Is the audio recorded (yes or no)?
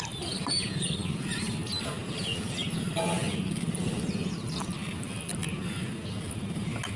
yes